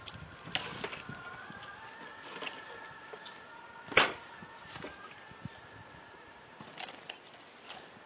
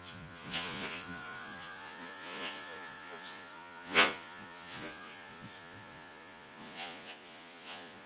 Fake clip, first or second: second